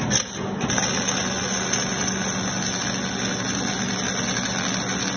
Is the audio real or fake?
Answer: real